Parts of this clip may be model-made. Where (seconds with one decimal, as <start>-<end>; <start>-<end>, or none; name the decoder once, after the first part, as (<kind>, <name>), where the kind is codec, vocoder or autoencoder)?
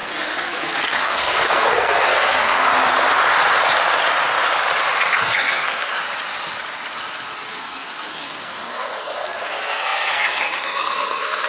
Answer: 0.0-2.7 (codec, SNAC); 5.2-6.0; 7.5-11.5